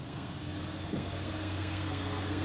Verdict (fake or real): fake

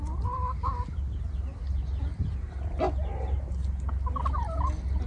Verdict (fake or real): real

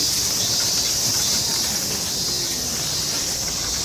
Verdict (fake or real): real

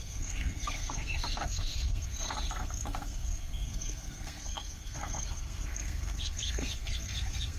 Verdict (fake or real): fake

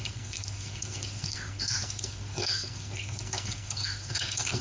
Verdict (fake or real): fake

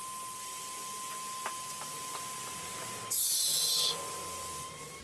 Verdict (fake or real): real